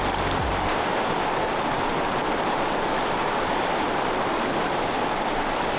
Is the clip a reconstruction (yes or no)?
no